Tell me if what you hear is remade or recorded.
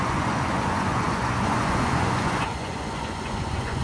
remade